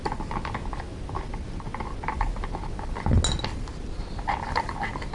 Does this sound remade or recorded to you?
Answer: recorded